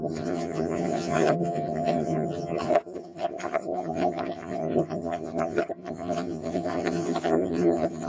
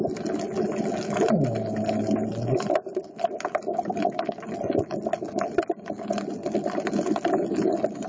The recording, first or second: second